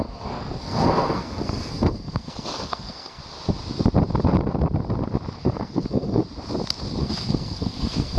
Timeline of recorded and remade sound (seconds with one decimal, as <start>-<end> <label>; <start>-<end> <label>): 0.0-3.2 remade; 3.2-5.4 recorded; 5.4-6.2 remade; 6.2-7.0 recorded; 7.0-8.2 remade